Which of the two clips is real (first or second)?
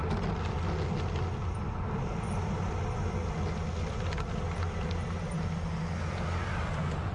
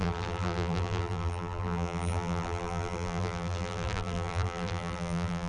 first